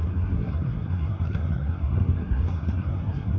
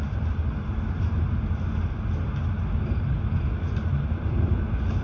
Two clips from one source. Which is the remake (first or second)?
first